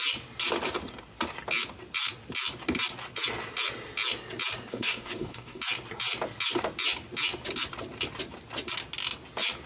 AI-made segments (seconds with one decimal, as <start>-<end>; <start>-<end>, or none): 4.7-5.6